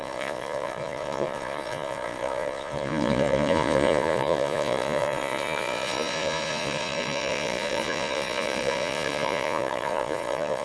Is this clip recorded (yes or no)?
no